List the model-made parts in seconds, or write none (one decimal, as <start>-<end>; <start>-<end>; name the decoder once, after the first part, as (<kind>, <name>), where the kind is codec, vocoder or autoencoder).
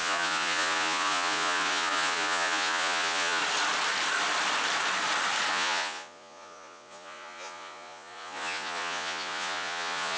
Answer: 0.0-3.4 (vocoder, Vocos); 5.5-10.2